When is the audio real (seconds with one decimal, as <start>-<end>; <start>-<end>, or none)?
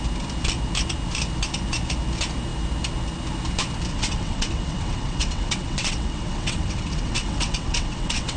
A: 0.0-3.9